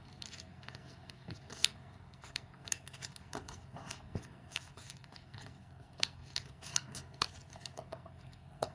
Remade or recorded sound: remade